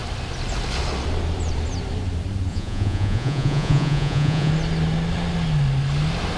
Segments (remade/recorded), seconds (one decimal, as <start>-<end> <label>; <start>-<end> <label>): 0.0-2.5 recorded; 2.5-4.5 remade; 4.5-6.4 recorded